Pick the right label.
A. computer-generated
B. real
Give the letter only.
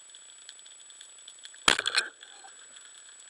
B